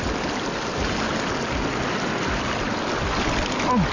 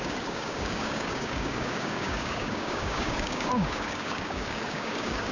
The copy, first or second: second